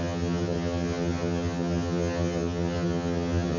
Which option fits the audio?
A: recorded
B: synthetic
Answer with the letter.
B